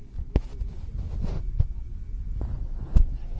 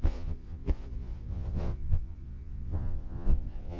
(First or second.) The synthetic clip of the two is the second